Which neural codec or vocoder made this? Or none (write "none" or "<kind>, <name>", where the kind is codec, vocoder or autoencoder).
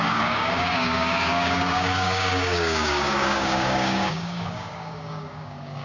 codec, DAC